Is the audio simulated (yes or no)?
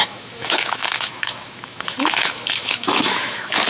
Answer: yes